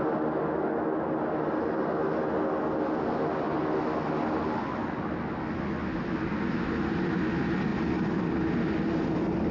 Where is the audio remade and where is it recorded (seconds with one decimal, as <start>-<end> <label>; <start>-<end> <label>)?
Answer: 0.0-9.5 recorded